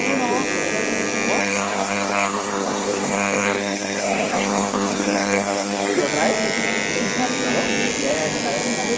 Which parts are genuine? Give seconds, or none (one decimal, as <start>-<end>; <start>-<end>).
0.0-1.4; 6.0-9.0